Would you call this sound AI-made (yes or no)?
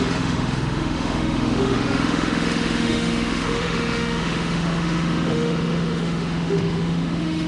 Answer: yes